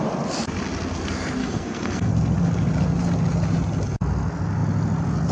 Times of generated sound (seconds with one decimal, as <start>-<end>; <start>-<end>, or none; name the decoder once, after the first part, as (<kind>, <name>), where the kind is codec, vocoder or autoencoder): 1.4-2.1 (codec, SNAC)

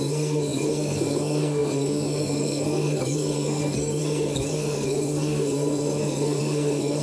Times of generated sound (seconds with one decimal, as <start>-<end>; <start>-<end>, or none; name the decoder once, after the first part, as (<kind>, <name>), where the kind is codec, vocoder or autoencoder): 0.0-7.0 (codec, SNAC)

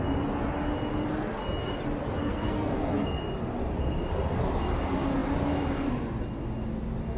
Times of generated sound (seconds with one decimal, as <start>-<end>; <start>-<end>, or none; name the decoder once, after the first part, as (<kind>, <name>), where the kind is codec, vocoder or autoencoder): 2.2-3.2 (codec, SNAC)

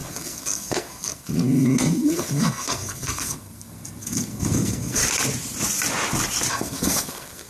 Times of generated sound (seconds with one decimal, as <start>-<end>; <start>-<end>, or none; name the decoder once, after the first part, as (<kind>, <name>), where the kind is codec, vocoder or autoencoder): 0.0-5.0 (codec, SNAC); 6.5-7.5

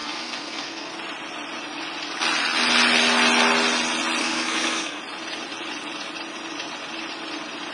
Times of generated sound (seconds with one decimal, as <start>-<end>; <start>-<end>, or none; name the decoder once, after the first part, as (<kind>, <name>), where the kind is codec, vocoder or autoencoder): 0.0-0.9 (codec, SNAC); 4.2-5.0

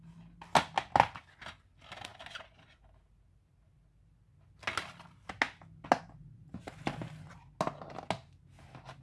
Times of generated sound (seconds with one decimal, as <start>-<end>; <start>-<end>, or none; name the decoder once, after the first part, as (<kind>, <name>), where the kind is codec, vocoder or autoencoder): none